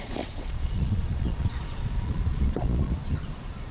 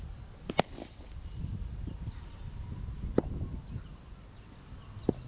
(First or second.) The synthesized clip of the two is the first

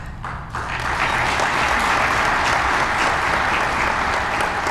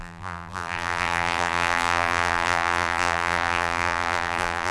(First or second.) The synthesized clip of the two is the second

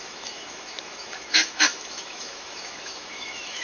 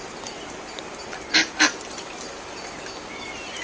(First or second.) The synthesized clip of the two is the first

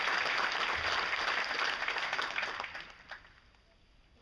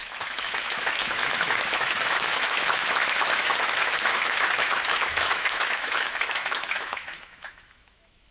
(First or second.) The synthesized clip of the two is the second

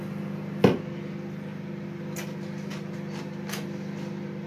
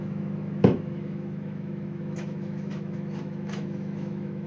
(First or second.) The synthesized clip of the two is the second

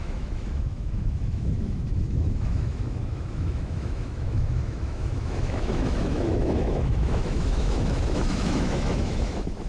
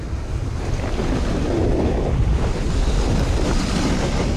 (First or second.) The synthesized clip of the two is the first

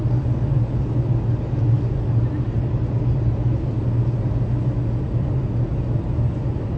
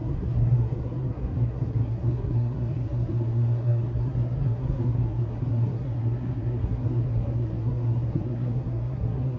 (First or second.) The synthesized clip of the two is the second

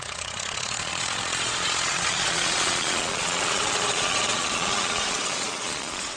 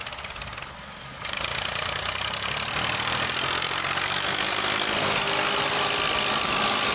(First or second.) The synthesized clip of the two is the first